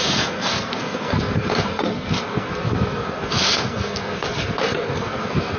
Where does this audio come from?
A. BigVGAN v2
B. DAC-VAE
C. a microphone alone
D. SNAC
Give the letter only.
D